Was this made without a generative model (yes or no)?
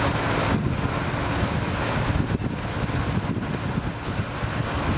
yes